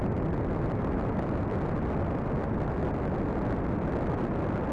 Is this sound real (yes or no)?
yes